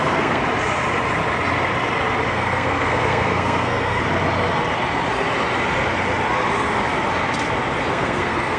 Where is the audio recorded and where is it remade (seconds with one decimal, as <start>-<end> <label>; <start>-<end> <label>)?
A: 0.0-0.4 remade; 0.4-2.3 recorded; 2.3-4.0 remade; 4.0-7.9 recorded; 7.9-8.6 remade